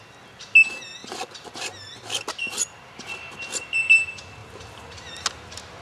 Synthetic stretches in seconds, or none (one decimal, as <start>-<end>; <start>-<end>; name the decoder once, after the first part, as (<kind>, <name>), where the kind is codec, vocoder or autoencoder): none